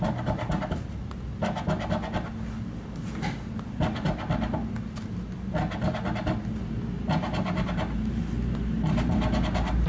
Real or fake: real